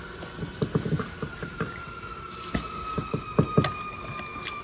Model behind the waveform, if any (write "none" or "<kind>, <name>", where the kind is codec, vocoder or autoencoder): none